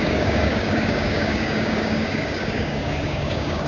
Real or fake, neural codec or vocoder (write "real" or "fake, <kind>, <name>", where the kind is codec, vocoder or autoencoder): fake, codec, DAC